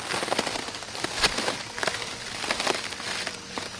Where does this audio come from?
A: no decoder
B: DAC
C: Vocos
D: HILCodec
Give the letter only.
A